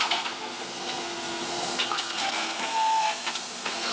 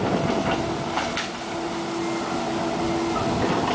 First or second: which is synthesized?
first